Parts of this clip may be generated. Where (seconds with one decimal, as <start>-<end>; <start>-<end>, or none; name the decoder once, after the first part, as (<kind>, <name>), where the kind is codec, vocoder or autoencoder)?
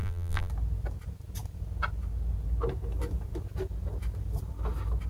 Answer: 0.0-0.5 (vocoder, BigVGAN v2)